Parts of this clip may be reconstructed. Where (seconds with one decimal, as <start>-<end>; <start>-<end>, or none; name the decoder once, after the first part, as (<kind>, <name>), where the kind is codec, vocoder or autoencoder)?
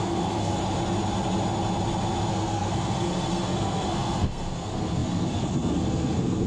0.0-0.6 (codec, SNAC); 2.3-6.5